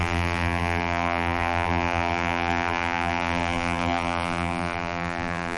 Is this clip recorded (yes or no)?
no